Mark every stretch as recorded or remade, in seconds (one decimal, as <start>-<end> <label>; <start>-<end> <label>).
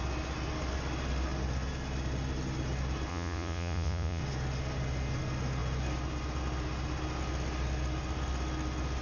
0.0-3.1 recorded; 3.1-4.2 remade; 4.2-9.0 recorded